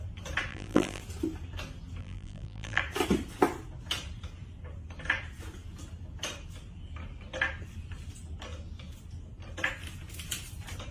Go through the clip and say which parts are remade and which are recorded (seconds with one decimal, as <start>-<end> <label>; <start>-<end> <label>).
0.0-0.5 recorded; 0.5-1.0 remade; 1.0-2.0 recorded; 2.0-2.8 remade; 2.8-10.9 recorded